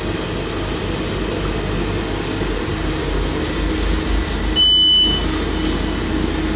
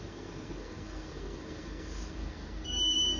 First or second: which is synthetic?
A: second